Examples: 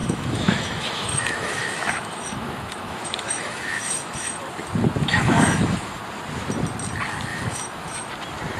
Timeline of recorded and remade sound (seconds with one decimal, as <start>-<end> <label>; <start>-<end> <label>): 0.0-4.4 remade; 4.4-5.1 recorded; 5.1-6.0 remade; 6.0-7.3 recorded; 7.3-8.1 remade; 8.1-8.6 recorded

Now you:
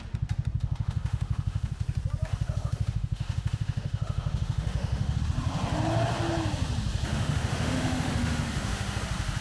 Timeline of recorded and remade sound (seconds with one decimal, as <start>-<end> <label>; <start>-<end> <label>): 0.0-0.6 recorded; 0.6-1.7 remade; 1.7-2.3 recorded; 2.3-5.2 remade; 5.2-7.1 recorded; 7.1-9.0 remade; 9.0-9.4 recorded

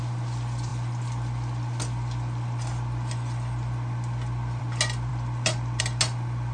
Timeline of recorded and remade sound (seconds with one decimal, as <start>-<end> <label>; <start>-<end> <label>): 0.0-6.5 recorded

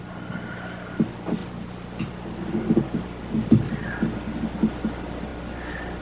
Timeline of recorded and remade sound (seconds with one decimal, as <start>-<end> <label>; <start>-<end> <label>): 0.0-6.0 recorded

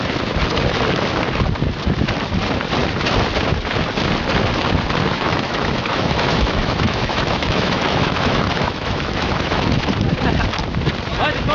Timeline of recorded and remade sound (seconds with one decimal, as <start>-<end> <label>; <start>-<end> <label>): 0.0-5.1 recorded; 5.1-9.9 remade; 9.9-11.5 recorded